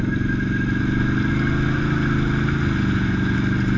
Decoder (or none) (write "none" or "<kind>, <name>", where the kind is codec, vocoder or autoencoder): none